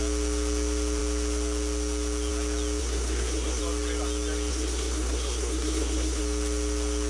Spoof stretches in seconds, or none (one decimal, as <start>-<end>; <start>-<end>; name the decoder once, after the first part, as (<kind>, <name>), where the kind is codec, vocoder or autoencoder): 2.8-3.6 (codec, SNAC); 4.5-6.2